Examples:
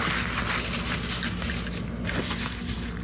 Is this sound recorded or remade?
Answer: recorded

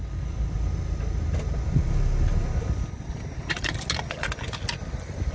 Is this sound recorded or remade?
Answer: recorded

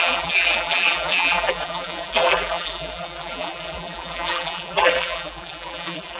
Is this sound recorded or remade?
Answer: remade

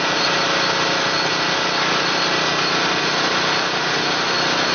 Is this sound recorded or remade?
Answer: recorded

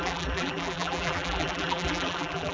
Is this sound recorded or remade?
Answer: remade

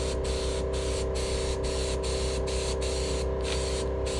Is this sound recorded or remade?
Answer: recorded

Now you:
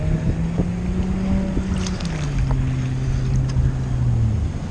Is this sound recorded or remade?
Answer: recorded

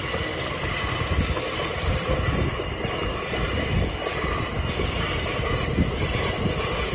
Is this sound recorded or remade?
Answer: recorded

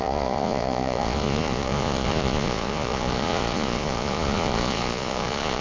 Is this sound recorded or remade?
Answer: remade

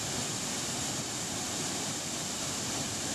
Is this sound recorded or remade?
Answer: remade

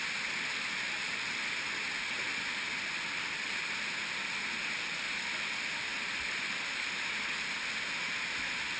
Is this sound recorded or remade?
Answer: recorded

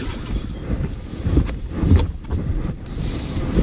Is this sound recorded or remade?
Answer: recorded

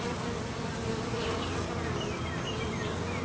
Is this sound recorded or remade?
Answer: recorded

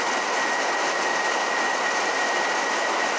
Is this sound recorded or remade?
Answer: recorded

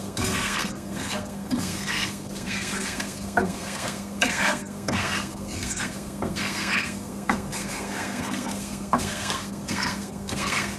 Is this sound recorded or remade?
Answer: remade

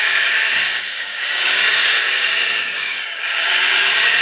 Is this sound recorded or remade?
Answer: remade